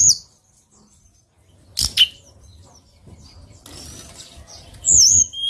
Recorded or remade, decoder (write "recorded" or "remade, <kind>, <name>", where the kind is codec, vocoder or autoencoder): recorded